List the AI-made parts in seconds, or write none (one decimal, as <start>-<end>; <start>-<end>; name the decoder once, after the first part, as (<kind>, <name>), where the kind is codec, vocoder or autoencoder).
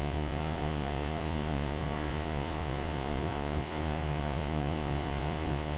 0.0-5.8 (vocoder, Vocos)